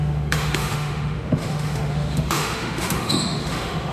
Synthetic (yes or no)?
yes